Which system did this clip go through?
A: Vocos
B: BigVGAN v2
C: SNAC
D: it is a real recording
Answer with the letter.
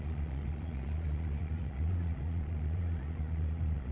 A